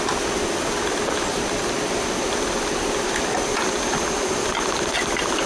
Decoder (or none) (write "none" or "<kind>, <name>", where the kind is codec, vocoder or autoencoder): none